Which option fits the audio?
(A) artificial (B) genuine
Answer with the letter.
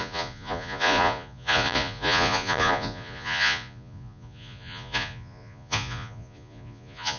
A